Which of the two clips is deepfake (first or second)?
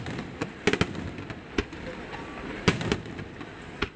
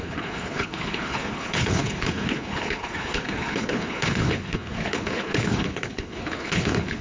second